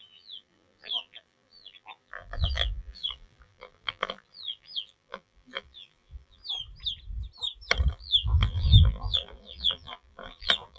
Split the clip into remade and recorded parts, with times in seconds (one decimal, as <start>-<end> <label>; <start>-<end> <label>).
0.0-6.4 remade; 6.4-7.9 recorded; 7.9-10.8 remade